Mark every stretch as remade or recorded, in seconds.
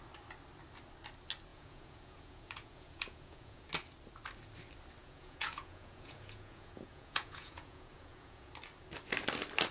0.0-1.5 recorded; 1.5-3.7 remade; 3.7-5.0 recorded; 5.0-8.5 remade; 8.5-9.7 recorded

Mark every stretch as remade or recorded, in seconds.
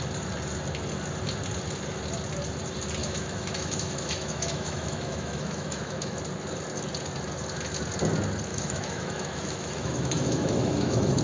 0.0-3.0 recorded; 3.0-6.2 remade; 6.2-8.5 recorded; 8.5-11.2 remade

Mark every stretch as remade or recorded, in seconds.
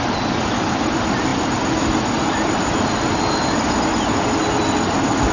0.0-5.3 recorded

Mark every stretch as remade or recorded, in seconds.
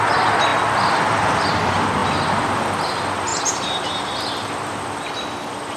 0.0-3.3 recorded; 3.3-4.8 remade; 4.8-5.8 recorded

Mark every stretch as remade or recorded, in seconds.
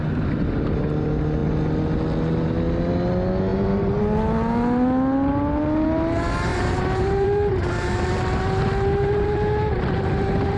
0.0-3.5 recorded; 3.5-4.0 remade; 4.0-6.5 recorded; 6.5-10.6 remade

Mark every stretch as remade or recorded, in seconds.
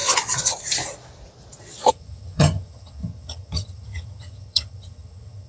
0.0-1.9 recorded; 1.9-5.5 remade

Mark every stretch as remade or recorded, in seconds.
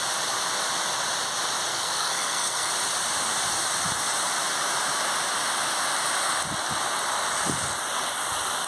0.0-1.7 recorded; 1.7-2.7 remade; 2.7-8.7 recorded